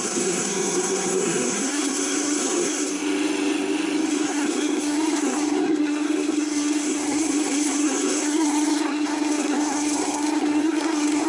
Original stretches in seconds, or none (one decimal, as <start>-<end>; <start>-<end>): 2.9-4.1